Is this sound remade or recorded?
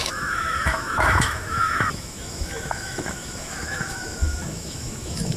remade